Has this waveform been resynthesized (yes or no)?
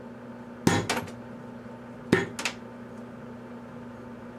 no